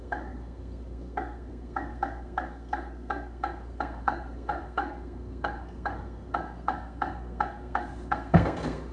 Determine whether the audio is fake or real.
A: fake